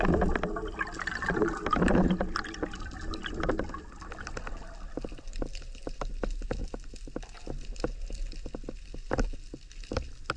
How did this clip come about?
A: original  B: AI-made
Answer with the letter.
A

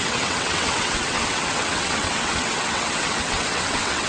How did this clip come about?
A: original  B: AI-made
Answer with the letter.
B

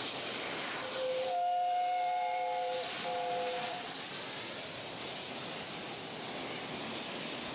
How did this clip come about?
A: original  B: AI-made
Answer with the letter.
A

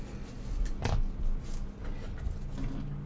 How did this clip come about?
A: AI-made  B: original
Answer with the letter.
B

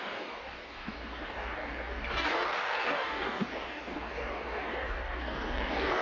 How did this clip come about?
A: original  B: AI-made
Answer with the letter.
B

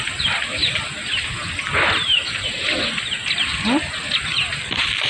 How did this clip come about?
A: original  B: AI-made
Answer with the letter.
A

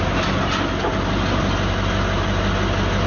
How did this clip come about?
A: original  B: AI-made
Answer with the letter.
A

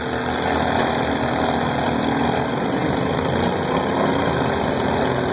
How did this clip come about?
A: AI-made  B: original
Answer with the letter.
B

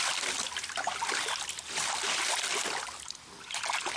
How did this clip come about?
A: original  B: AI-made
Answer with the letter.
A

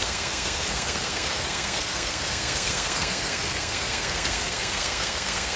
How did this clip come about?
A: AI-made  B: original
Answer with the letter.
A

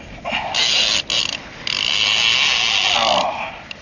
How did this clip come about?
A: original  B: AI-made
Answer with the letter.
A